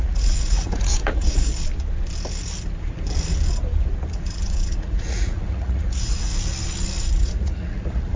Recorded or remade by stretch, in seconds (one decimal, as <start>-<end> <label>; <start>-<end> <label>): 0.0-1.5 remade; 1.5-4.1 recorded; 4.1-6.3 remade; 6.3-7.0 recorded; 7.0-8.2 remade